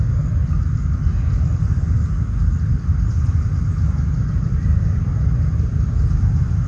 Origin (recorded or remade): recorded